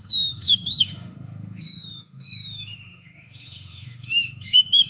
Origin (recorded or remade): remade